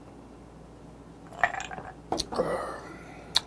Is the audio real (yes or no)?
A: yes